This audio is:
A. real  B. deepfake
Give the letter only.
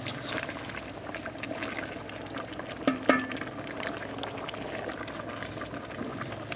A